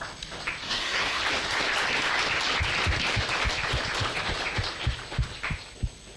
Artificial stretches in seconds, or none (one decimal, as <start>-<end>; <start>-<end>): 0.6-1.2